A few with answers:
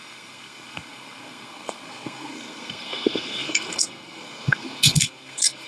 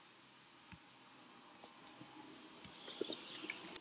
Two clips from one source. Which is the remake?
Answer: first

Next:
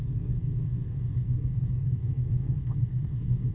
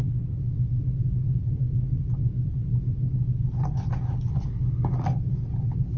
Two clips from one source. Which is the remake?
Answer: first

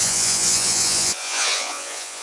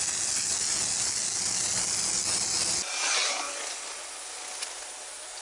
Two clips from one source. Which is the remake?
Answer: first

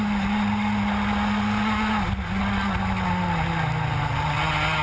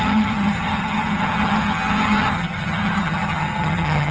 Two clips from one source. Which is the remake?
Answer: second